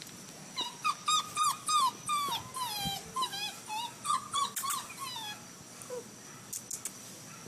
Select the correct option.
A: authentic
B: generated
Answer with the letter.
A